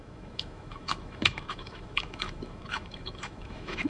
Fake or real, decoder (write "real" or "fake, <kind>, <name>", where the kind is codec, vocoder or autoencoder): fake, autoencoder, DAC-VAE